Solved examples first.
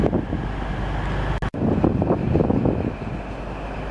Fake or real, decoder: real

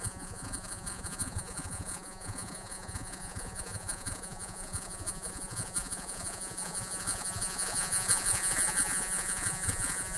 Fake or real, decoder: fake, vocoder, Vocos